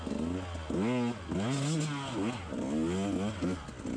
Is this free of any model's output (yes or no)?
yes